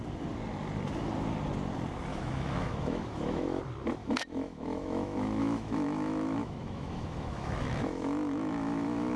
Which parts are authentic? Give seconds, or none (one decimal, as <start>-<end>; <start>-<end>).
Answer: 0.0-2.1; 3.6-4.0